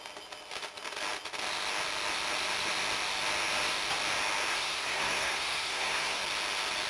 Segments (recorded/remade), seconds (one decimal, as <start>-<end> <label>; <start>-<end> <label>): 0.0-4.5 recorded; 4.5-6.2 remade; 6.2-6.9 recorded